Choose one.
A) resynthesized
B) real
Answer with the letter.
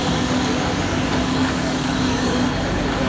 A